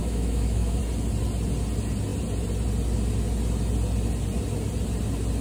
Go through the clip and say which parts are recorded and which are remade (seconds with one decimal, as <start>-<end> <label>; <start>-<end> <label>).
0.0-0.8 remade; 0.8-5.4 recorded